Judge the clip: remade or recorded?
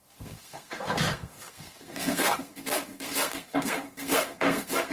remade